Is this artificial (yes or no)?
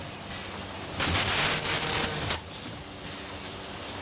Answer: no